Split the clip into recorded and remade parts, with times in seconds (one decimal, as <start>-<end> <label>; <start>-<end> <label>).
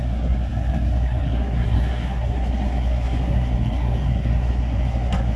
0.0-5.4 remade